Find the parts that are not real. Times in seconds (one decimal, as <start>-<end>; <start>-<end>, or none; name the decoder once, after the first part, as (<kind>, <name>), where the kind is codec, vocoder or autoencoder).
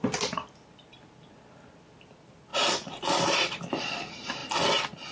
none